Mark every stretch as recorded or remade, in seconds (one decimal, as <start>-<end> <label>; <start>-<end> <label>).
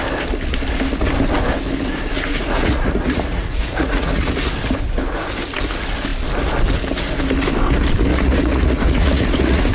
0.0-2.3 recorded; 2.3-4.5 remade; 4.5-8.1 recorded; 8.1-9.7 remade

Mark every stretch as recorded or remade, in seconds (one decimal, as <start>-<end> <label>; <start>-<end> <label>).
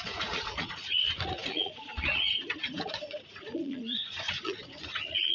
0.0-5.3 remade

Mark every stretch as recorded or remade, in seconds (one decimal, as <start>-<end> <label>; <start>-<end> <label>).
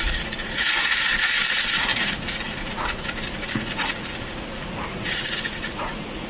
0.0-6.3 remade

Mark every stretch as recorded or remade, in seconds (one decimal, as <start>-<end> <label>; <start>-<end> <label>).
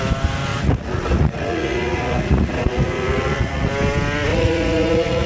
0.0-0.5 recorded; 0.5-3.7 remade; 3.7-4.3 recorded; 4.3-5.3 remade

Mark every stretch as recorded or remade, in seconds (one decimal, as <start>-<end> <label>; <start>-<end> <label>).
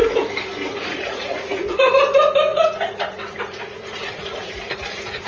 0.0-0.7 recorded; 0.7-1.9 remade; 1.9-2.5 recorded; 2.5-5.3 remade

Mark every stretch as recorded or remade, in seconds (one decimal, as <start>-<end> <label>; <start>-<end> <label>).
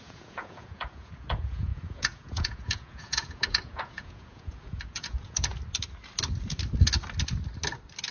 0.0-5.5 remade; 5.5-8.1 recorded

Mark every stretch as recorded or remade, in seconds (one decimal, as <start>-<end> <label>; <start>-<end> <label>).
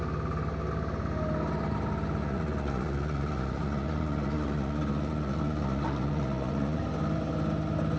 0.0-2.2 recorded; 2.2-6.8 remade; 6.8-8.0 recorded